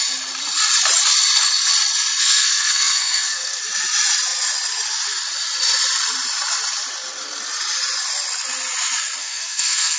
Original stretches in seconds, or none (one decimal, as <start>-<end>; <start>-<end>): 0.0-2.2; 3.6-9.2